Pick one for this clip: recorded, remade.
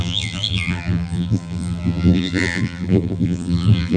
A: remade